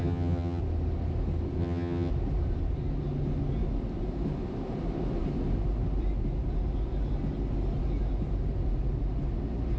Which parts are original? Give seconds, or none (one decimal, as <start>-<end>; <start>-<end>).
0.6-1.6; 2.1-9.8